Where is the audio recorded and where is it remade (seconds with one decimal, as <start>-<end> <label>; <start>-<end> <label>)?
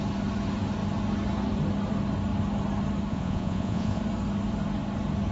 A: 0.0-3.1 recorded; 3.1-4.0 remade; 4.0-5.3 recorded